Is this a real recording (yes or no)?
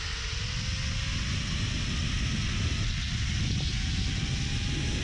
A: yes